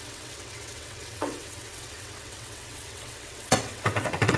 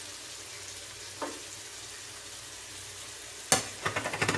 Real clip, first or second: second